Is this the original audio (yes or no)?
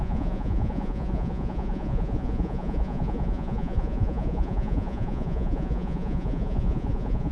no